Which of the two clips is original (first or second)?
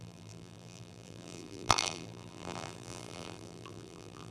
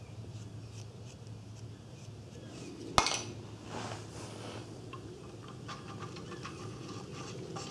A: second